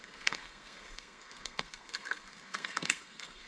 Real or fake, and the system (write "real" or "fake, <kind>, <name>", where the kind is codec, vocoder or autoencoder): fake, codec, SNAC